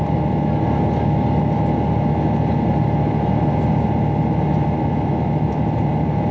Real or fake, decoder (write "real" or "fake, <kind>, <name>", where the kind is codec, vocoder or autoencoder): real